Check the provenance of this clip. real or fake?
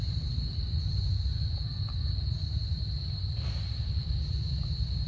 fake